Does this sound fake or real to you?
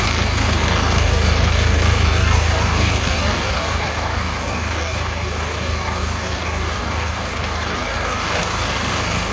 fake